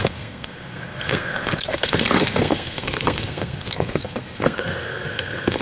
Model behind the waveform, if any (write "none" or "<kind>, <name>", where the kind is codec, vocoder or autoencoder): codec, SNAC